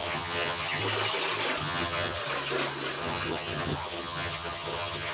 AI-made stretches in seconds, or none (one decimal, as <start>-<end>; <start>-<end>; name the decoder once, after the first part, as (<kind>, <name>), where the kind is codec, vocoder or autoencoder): 0.0-0.8 (vocoder, HiFi-GAN); 1.6-2.2; 3.0-5.1